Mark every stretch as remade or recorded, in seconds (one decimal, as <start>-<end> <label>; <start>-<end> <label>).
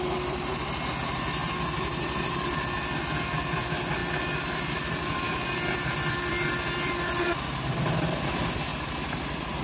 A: 0.0-1.4 recorded; 1.4-2.9 remade; 2.9-9.6 recorded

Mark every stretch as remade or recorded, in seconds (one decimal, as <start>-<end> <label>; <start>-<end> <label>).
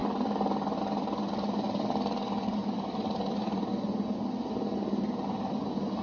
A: 0.0-6.0 recorded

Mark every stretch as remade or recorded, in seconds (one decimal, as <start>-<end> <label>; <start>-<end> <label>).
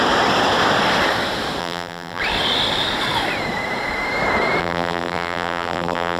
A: 0.0-1.6 recorded; 1.6-2.2 remade; 2.2-4.6 recorded; 4.6-6.2 remade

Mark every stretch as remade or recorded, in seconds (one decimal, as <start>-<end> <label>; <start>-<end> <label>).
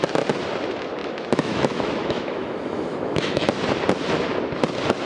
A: 0.0-1.0 recorded; 1.0-3.5 remade; 3.5-5.1 recorded